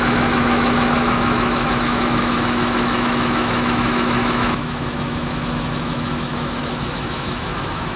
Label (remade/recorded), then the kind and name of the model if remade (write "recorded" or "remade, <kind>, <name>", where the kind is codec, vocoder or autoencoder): remade, autoencoder, DAC-VAE